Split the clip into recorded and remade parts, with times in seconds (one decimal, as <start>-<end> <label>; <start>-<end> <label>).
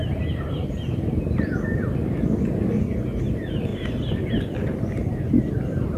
0.0-2.0 remade; 2.0-3.2 recorded; 3.2-6.0 remade